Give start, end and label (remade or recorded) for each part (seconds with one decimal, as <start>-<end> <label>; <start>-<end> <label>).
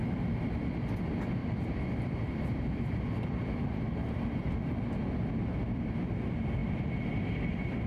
0.0-1.4 recorded; 1.4-3.5 remade; 3.5-6.6 recorded; 6.6-7.9 remade